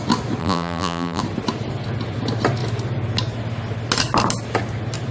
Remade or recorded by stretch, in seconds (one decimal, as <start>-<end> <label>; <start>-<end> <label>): 0.0-0.4 recorded; 0.4-1.2 remade; 1.2-5.1 recorded